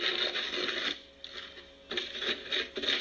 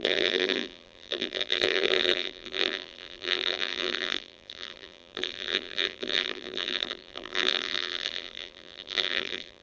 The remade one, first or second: second